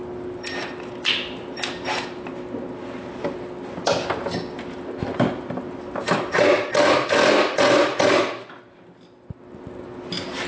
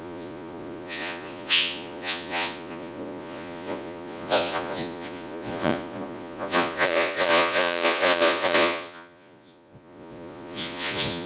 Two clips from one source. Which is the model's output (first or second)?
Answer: second